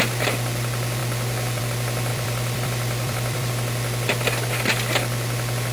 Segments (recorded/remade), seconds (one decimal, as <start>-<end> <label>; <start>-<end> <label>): 0.0-2.1 recorded; 2.1-3.5 remade; 3.5-5.7 recorded